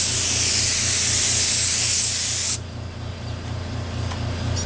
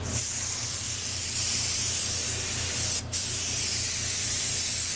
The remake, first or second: second